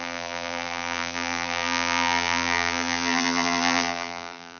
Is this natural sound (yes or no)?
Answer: no